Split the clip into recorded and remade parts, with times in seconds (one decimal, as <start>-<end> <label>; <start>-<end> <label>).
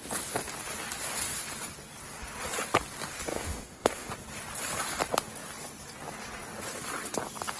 0.0-3.3 recorded; 3.3-4.1 remade; 4.1-7.6 recorded